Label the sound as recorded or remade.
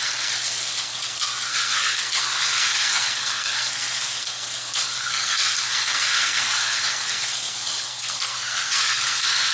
remade